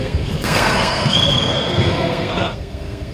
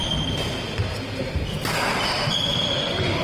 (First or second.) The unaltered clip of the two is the second